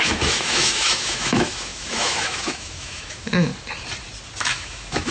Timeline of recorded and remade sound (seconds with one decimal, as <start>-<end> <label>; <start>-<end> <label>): 0.0-3.5 remade; 3.5-4.4 recorded; 4.4-5.1 remade